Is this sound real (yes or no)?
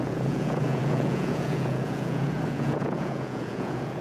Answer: no